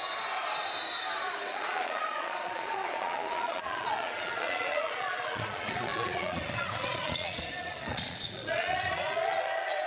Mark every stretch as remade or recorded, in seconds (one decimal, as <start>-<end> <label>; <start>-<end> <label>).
0.0-1.5 recorded; 1.5-9.9 remade